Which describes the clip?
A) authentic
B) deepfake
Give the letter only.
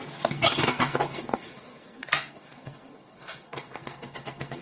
B